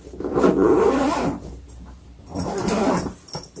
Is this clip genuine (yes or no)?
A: yes